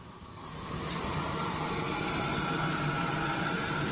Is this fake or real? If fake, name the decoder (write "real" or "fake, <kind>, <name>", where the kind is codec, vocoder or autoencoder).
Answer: real